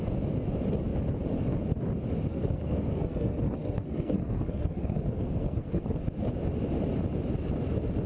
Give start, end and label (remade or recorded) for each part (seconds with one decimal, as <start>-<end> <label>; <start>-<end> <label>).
0.0-2.3 recorded; 2.3-6.0 remade; 6.0-8.1 recorded